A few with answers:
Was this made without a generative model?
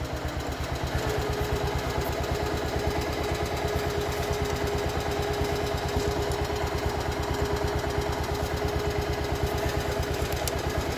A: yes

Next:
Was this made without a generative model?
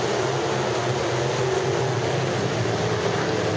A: yes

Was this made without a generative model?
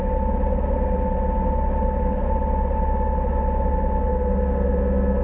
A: yes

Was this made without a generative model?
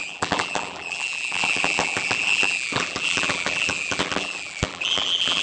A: no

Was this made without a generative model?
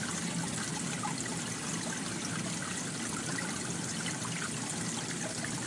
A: yes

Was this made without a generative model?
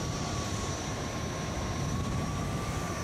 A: no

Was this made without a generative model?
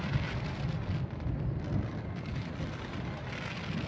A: no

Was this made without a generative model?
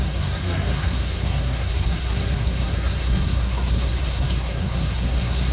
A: no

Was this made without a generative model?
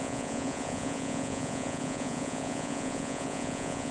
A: no